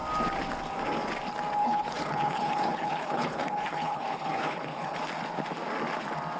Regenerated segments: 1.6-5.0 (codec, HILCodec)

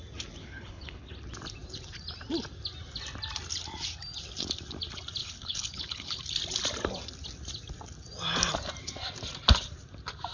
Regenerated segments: 0.4-1.1 (codec, HILCodec); 5.2-6.2

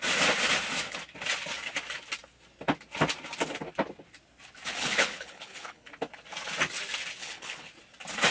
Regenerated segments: 4.7-5.9 (codec, HILCodec); 7.2-7.7

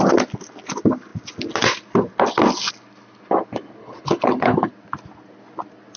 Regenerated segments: 3.8-4.7 (codec, HILCodec)

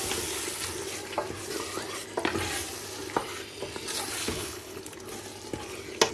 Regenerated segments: 4.2-4.8 (codec, HILCodec)

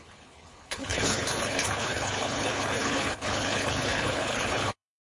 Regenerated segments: 0.0-5.0 (codec, HILCodec)

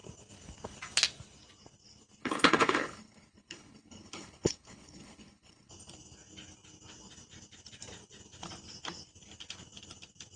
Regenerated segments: 2.2-5.7 (codec, HILCodec)